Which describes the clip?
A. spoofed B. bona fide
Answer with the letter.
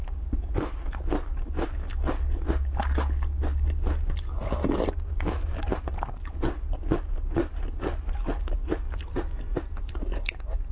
B